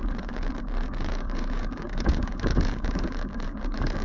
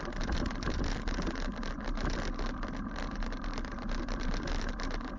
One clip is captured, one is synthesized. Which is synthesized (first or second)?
first